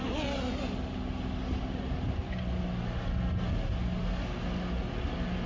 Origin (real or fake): real